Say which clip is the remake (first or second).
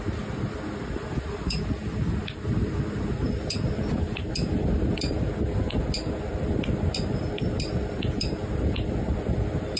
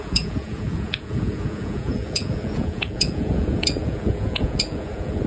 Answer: second